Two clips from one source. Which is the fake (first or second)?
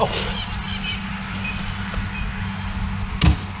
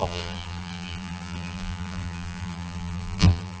second